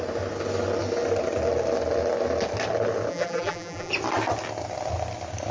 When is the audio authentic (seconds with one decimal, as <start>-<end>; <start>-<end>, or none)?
0.0-3.1; 3.9-5.5